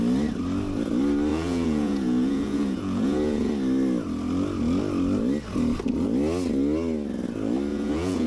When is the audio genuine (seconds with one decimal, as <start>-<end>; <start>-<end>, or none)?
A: 0.0-1.3; 3.5-7.7